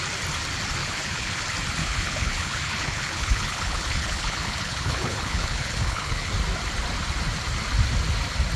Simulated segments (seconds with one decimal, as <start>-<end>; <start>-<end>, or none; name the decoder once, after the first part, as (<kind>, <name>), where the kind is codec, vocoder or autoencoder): 0.8-1.4 (codec, HILCodec); 1.8-6.3